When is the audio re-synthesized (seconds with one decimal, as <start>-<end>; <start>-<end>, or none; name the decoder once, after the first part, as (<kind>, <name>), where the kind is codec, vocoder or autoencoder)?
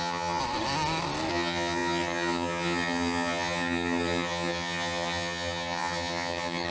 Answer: 0.0-0.4 (vocoder, HiFi-GAN); 1.3-6.7